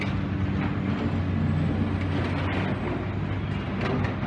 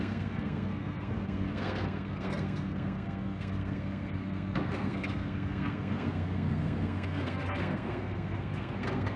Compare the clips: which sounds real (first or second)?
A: first